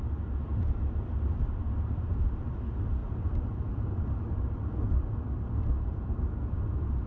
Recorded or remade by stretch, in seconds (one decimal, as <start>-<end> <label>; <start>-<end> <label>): 0.0-0.5 recorded; 0.5-2.1 remade; 2.1-3.0 recorded; 3.0-4.7 remade; 4.7-5.9 recorded; 5.9-6.4 remade; 6.4-7.1 recorded